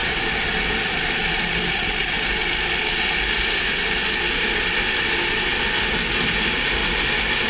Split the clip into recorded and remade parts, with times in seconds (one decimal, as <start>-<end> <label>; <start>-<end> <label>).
0.0-2.0 remade; 2.0-3.4 recorded; 3.4-5.5 remade; 5.5-6.2 recorded; 6.2-6.8 remade; 6.8-7.5 recorded